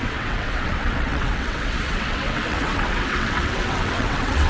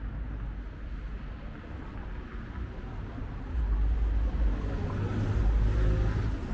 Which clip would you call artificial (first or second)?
first